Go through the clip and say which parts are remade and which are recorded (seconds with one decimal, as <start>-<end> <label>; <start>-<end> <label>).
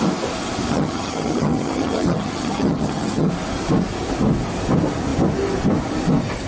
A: 0.0-0.7 recorded; 0.7-3.3 remade; 3.3-6.5 recorded